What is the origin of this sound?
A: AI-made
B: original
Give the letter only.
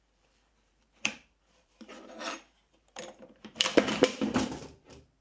A